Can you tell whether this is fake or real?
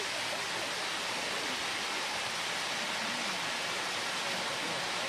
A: real